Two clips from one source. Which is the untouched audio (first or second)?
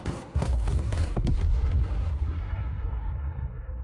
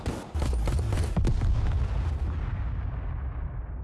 second